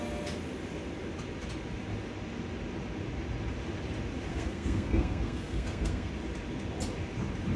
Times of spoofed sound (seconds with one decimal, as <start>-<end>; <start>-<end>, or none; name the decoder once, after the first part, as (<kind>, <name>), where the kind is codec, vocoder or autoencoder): 4.3-6.1 (codec, SNAC)